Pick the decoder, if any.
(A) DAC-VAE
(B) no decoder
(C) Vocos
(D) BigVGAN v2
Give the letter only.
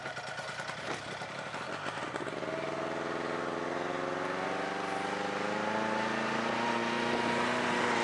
B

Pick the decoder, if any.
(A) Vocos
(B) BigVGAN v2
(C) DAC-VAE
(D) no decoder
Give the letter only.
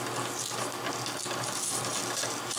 D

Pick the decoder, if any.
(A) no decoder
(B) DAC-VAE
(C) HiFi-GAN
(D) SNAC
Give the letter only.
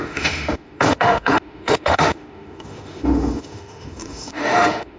B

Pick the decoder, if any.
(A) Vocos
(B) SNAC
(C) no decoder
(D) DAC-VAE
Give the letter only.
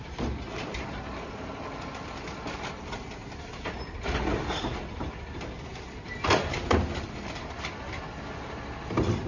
C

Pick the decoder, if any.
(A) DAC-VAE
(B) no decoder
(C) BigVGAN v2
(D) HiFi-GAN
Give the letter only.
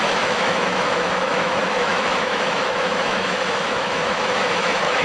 A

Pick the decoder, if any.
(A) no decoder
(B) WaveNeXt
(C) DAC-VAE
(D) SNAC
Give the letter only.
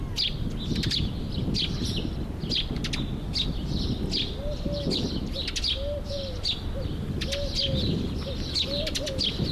A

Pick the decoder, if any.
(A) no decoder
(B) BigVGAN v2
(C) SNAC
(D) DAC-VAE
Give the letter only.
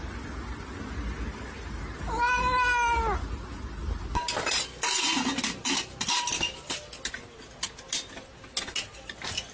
A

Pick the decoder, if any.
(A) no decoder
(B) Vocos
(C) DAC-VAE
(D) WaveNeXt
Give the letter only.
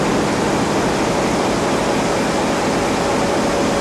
A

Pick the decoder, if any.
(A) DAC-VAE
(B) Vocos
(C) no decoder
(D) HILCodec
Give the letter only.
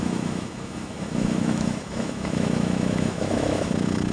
A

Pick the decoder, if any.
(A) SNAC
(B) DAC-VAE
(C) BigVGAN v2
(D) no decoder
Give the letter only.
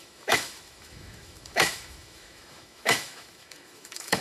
B